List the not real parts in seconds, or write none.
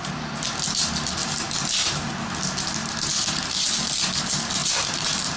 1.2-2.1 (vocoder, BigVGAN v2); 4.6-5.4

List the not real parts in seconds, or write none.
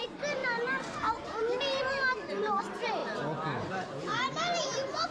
0.0-3.0 (vocoder, BigVGAN v2); 3.7-5.1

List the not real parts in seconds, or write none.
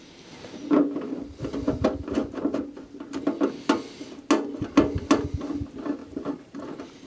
6.0-6.5 (vocoder, BigVGAN v2)